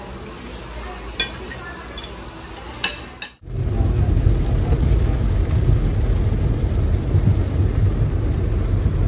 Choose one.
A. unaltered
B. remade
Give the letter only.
A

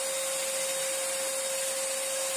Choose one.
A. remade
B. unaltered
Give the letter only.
B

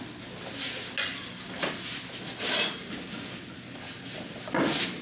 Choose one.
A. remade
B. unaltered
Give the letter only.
B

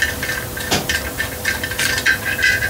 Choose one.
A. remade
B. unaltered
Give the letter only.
A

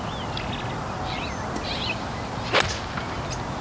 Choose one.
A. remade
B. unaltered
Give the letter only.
B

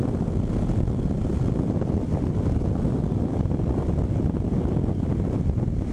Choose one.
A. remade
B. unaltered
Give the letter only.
A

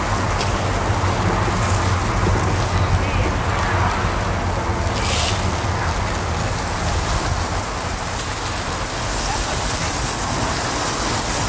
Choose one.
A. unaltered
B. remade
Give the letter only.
A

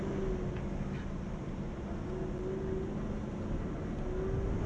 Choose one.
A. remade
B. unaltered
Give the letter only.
B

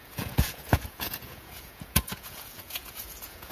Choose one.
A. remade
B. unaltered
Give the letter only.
A